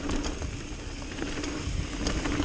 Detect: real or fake real